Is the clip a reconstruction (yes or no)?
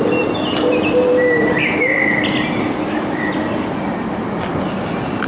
no